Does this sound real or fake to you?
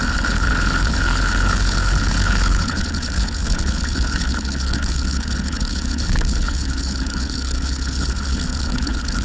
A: fake